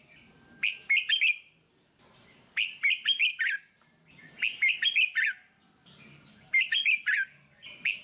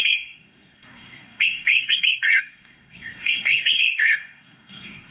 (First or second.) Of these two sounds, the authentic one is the first